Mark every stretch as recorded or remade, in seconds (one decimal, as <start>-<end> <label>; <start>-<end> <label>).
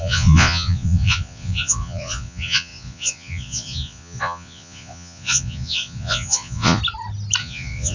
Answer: 0.0-6.8 remade; 6.8-7.4 recorded; 7.4-7.9 remade